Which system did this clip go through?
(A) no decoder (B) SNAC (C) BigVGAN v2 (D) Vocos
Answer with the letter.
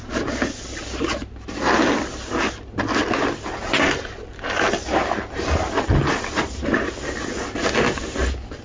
A